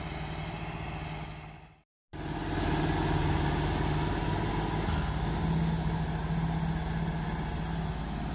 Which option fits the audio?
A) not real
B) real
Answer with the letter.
B